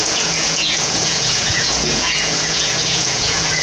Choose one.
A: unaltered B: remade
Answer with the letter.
B